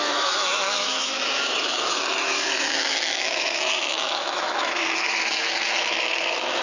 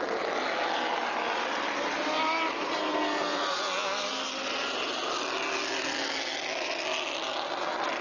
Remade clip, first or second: first